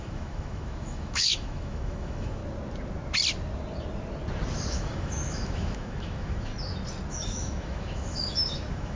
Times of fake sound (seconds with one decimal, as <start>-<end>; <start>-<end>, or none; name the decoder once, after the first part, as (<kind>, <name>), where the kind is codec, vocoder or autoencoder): 0.0-2.4 (autoencoder, DAC-VAE); 4.7-6.5; 7.1-9.0